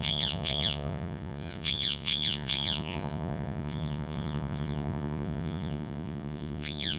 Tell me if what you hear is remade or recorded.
remade